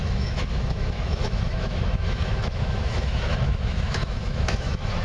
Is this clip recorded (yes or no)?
no